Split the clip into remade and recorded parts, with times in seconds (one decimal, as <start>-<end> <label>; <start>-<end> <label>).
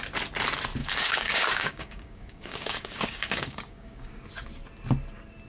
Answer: 0.0-0.8 recorded; 0.8-4.1 remade; 4.1-5.5 recorded